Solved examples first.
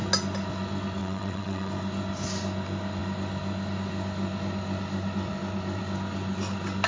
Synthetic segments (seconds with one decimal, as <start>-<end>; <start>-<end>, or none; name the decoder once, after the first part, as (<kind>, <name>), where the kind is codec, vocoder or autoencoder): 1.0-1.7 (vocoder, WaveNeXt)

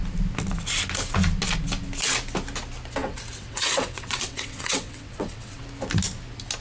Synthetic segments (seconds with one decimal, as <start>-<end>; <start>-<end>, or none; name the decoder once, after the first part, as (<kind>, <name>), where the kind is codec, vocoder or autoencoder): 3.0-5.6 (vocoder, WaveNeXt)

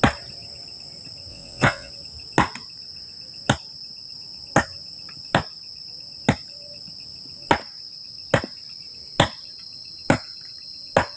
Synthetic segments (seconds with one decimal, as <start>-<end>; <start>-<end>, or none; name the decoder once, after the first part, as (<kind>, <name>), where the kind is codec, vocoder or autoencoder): 1.3-1.9 (vocoder, WaveNeXt)

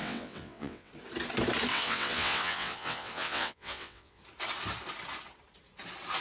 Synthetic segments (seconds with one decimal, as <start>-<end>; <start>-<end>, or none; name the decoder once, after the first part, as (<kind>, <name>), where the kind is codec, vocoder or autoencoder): 0.0-0.9 (vocoder, WaveNeXt); 1.7-4.2

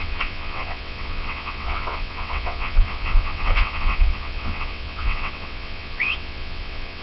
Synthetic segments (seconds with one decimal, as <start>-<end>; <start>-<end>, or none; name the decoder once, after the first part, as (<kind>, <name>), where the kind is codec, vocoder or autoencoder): 0.0-7.0 (vocoder, WaveNeXt)